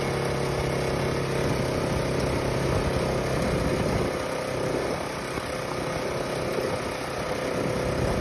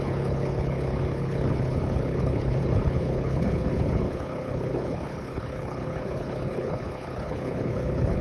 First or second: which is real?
first